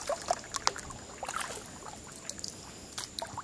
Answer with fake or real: real